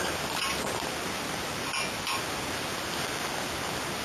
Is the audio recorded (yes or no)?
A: yes